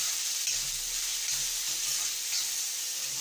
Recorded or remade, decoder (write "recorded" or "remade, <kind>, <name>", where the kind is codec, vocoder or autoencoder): recorded